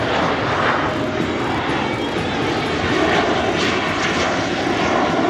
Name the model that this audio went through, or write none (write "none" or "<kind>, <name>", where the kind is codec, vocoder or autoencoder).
none